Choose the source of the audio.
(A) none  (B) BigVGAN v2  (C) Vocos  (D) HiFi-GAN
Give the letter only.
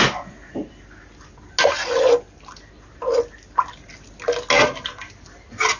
A